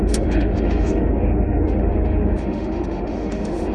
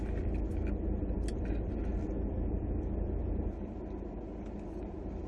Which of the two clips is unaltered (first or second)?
second